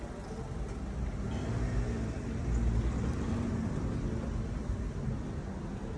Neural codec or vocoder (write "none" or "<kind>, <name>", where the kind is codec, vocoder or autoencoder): none